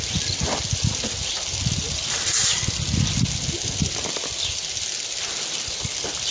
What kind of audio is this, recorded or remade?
recorded